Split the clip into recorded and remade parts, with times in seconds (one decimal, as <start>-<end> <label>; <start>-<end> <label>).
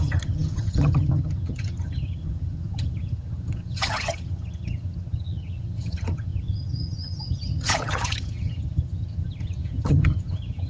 0.0-10.7 remade